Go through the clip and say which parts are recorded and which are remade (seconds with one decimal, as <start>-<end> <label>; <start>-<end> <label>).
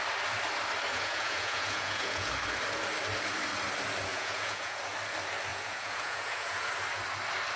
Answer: 0.0-0.9 recorded; 0.9-2.3 remade; 2.3-4.1 recorded; 4.1-4.8 remade; 4.8-5.5 recorded; 5.5-6.7 remade; 6.7-7.6 recorded